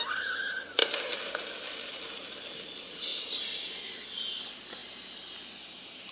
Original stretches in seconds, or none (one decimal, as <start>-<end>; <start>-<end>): 0.0-6.1